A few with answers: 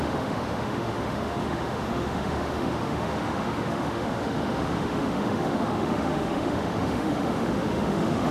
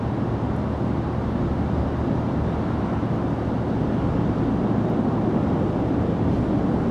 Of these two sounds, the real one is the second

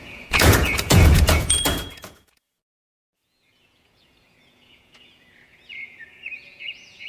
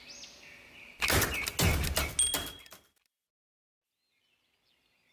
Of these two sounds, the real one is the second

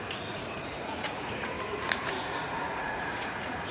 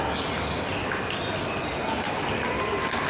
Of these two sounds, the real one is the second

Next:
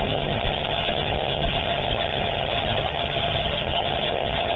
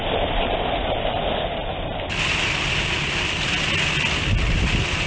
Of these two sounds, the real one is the second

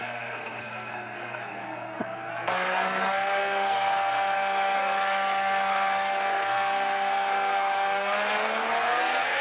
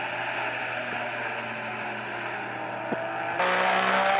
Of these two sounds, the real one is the second